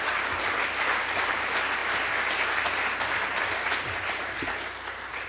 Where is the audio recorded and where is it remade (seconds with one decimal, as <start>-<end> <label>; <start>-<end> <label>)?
0.0-5.3 recorded